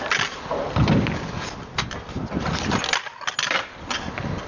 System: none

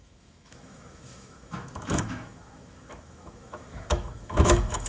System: autoencoder, DAC-VAE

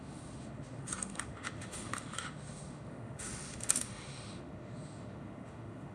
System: autoencoder, DAC-VAE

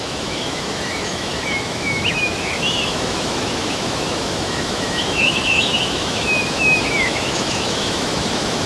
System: autoencoder, DAC-VAE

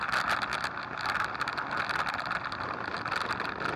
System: none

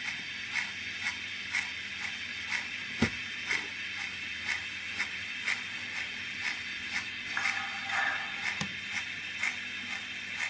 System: none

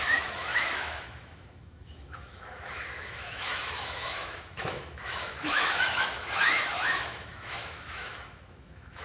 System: autoencoder, DAC-VAE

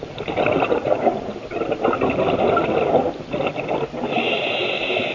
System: none